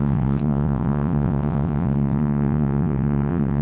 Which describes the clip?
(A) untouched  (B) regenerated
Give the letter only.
B